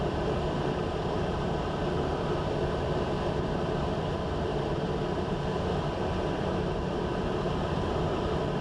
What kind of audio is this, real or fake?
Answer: fake